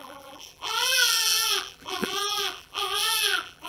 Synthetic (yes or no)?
yes